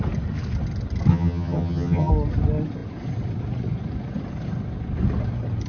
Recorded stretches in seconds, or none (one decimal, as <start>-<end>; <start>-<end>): 0.0-1.1; 2.1-5.7

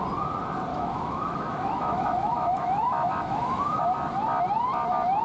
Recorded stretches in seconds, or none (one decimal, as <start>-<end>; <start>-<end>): 0.0-0.7; 3.8-5.2

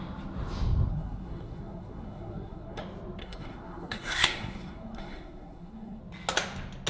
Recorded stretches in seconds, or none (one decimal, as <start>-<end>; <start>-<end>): 0.0-0.9; 2.8-3.2; 6.0-6.9

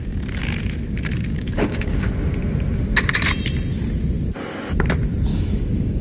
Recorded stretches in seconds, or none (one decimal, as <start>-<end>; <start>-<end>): 0.0-1.3; 2.1-5.3